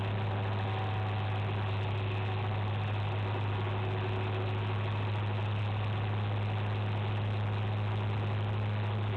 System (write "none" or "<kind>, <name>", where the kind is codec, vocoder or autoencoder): none